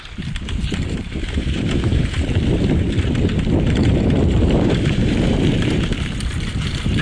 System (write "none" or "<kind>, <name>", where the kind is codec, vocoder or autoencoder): vocoder, BigVGAN v2